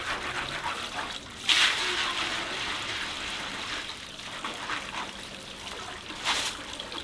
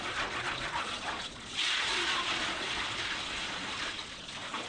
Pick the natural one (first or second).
first